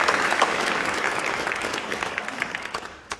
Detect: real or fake fake